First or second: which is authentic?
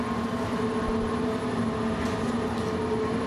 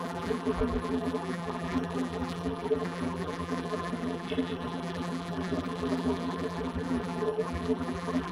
first